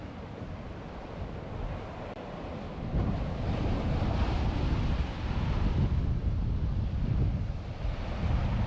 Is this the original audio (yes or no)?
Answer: yes